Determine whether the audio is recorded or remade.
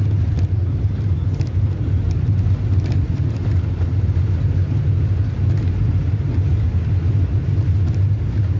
recorded